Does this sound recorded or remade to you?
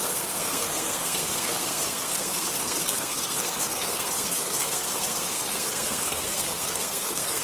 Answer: remade